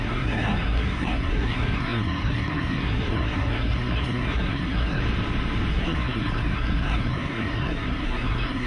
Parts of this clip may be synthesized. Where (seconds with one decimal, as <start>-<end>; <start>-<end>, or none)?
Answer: 0.0-5.0; 5.7-8.7